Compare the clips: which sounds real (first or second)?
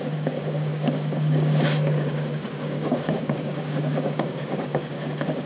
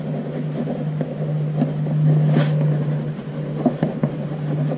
second